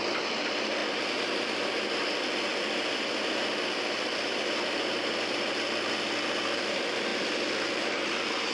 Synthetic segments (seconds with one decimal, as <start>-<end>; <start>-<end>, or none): 0.0-8.5